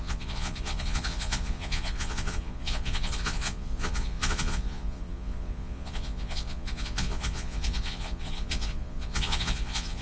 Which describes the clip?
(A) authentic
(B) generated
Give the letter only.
B